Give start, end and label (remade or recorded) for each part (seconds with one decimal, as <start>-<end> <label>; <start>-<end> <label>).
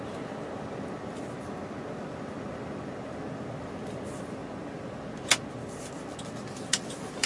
0.0-7.3 recorded